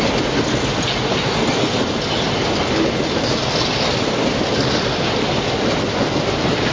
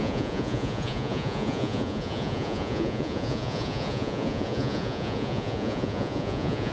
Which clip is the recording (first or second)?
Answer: first